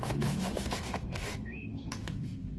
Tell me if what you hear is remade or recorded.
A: remade